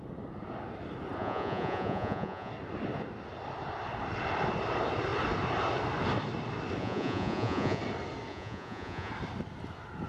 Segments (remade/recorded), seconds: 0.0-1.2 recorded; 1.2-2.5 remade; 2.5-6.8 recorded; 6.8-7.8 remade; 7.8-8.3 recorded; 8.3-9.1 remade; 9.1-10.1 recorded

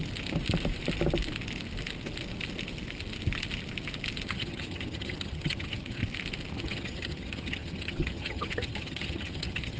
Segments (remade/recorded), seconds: 0.0-4.3 recorded; 4.3-6.0 remade; 6.0-6.6 recorded; 6.6-9.8 remade

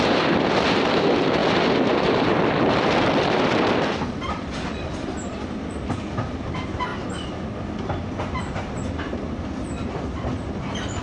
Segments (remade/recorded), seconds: 0.0-1.4 recorded; 1.4-4.9 remade; 4.9-11.0 recorded

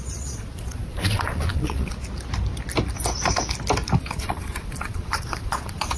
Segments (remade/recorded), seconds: 0.0-1.9 remade; 1.9-4.0 recorded; 4.0-6.0 remade